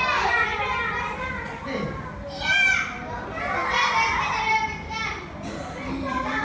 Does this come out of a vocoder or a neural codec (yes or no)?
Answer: no